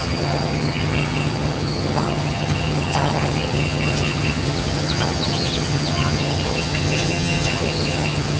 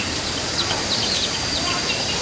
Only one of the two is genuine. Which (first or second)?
second